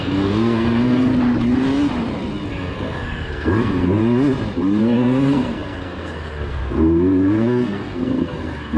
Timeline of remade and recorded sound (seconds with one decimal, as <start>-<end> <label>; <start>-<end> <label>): 0.0-1.1 remade; 1.1-2.5 recorded; 2.5-4.0 remade; 4.0-4.8 recorded; 4.8-8.8 remade